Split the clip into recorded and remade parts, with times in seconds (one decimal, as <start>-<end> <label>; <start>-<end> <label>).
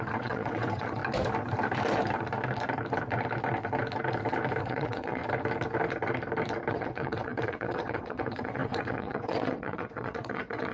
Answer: 0.0-1.0 remade; 1.0-4.6 recorded; 4.6-5.2 remade; 5.2-6.7 recorded; 6.7-10.7 remade